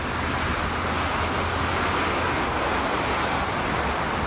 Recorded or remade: recorded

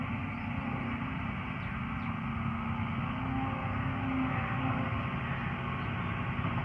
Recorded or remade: recorded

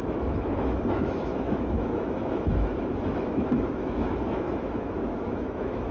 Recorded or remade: remade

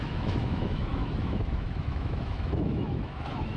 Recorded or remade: remade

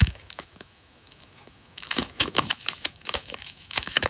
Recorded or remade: remade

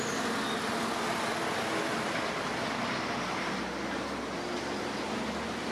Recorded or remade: recorded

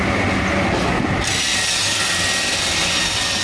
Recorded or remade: recorded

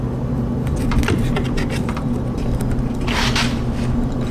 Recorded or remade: recorded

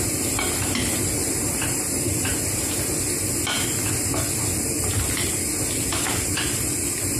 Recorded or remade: recorded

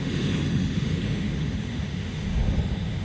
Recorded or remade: remade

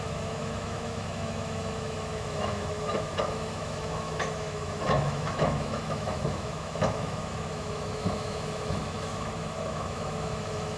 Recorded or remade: remade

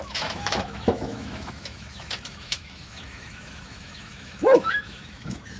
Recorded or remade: remade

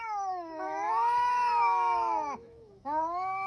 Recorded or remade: remade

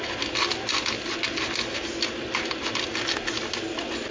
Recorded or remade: recorded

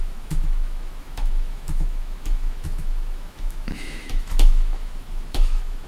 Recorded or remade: remade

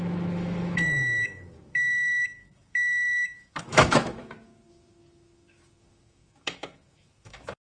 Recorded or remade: remade